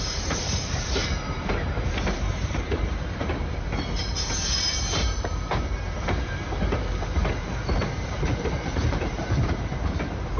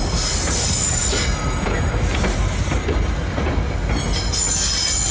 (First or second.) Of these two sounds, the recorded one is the second